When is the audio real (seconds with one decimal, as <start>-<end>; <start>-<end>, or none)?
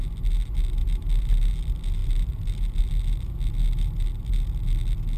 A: 0.0-5.2